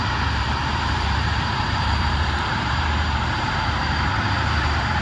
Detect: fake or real fake